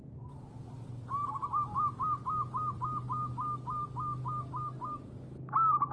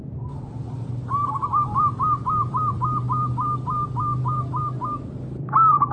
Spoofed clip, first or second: second